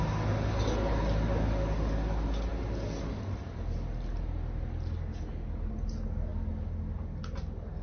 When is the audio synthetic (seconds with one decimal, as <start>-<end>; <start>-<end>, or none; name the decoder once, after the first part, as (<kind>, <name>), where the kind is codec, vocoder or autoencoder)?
none